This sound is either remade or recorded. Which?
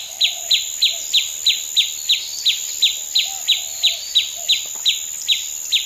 recorded